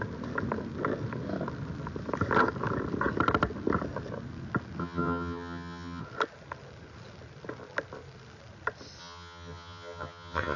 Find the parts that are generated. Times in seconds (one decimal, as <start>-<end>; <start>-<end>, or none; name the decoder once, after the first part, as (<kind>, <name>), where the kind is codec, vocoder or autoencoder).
4.8-6.0 (vocoder, HiFi-GAN); 9.0-10.6